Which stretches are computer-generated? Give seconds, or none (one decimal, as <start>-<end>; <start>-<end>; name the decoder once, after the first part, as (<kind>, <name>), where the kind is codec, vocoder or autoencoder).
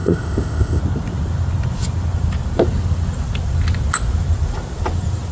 0.0-0.8 (codec, ZipCodec)